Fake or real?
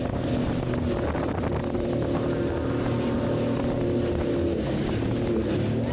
real